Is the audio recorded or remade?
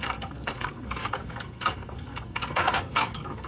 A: remade